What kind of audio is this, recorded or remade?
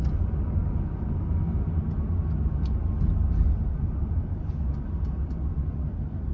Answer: recorded